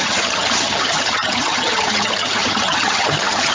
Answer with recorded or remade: remade